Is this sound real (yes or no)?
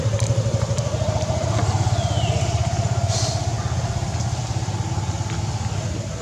yes